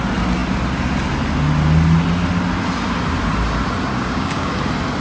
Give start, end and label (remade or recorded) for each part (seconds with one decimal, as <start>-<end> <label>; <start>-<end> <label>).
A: 0.0-3.9 recorded; 3.9-4.5 remade; 4.5-5.0 recorded